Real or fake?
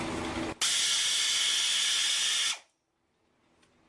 real